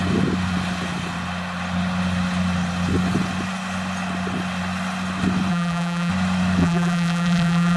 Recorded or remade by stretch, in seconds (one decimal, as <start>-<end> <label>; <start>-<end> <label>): 0.0-5.5 recorded; 5.5-6.1 remade; 6.1-6.6 recorded; 6.6-7.8 remade